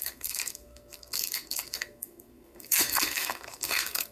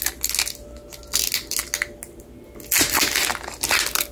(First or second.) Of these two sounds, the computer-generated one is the first